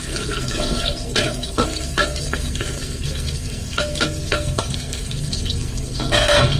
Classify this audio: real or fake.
fake